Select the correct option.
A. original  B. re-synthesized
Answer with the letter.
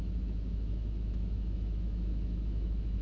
B